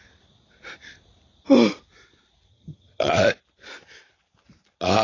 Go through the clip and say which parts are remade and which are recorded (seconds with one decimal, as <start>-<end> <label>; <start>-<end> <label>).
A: 0.0-2.5 recorded; 2.5-3.1 remade; 3.1-5.0 recorded